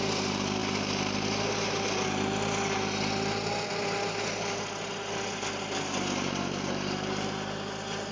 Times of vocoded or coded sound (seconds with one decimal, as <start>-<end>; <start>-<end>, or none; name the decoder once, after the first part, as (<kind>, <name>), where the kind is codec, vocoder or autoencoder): none